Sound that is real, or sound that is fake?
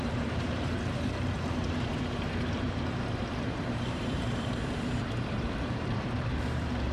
fake